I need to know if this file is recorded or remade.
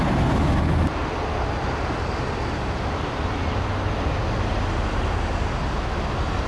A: recorded